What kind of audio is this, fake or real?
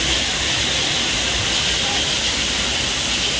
real